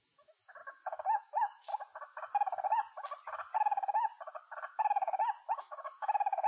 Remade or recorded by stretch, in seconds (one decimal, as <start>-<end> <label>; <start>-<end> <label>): 0.0-1.7 remade; 1.7-5.6 recorded; 5.6-6.5 remade